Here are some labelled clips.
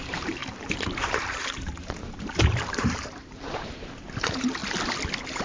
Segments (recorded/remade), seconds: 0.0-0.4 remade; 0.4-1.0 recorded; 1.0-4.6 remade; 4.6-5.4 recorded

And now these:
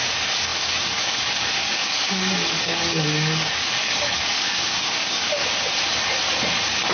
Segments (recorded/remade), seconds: 0.0-5.4 remade; 5.4-6.9 recorded

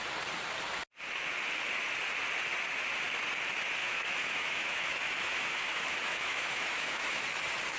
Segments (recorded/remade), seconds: 0.0-3.8 recorded; 3.8-7.2 remade; 7.2-7.8 recorded

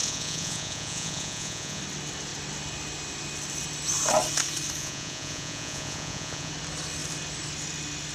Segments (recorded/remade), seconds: 0.0-1.8 remade; 1.8-4.8 recorded; 4.8-6.5 remade; 6.5-8.1 recorded

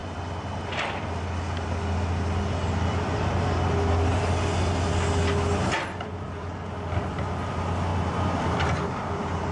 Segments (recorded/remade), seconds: 0.0-9.5 recorded

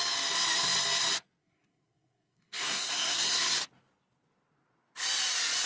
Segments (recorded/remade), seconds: 0.0-1.4 recorded; 1.4-3.6 remade; 3.6-5.7 recorded

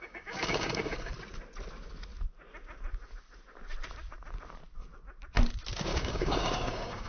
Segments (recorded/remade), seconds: 0.0-1.1 remade; 1.1-5.9 recorded; 5.9-7.1 remade